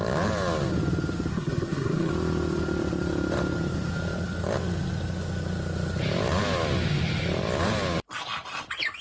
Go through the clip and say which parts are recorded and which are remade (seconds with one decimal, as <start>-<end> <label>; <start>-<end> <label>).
0.0-1.3 recorded; 1.3-2.1 remade; 2.1-9.0 recorded